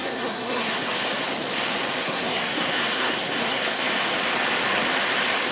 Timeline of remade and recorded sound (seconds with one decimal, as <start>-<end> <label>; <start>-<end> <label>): 0.0-0.9 remade; 0.9-2.0 recorded; 2.0-3.8 remade; 3.8-5.5 recorded